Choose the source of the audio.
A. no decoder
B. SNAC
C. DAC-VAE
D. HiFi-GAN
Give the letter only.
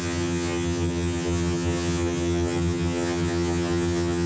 D